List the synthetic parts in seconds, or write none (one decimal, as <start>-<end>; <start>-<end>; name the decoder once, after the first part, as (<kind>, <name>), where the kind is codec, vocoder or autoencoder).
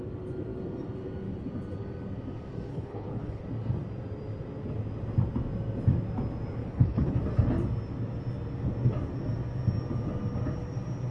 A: 2.7-3.4 (codec, HILCodec); 6.6-7.2